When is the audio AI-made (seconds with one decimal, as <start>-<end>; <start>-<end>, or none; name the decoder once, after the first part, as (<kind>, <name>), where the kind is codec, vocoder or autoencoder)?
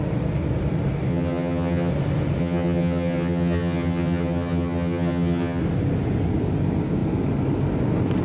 1.1-1.9 (vocoder, HiFi-GAN); 2.4-5.6